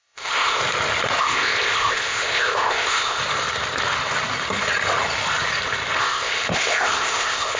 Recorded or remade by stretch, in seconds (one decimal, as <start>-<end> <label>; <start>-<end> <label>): 0.0-0.6 remade; 0.6-1.2 recorded; 1.2-3.2 remade; 3.2-6.0 recorded; 6.0-7.6 remade